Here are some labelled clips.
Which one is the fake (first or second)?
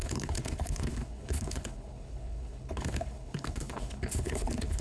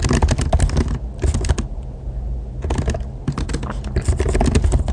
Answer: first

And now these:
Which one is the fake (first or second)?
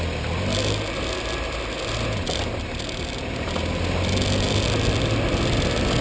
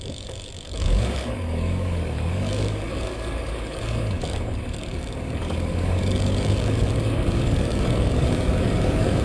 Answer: second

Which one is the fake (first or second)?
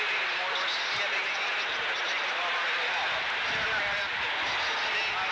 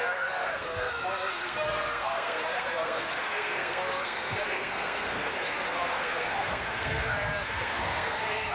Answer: second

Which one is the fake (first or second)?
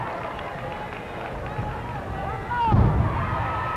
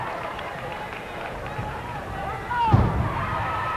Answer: second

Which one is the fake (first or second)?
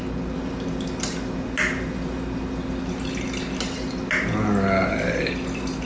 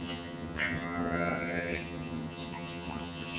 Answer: second